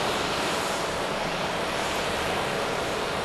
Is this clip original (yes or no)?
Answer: no